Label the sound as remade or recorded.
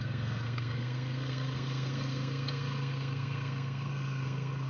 remade